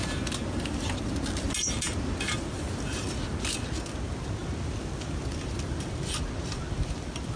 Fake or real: real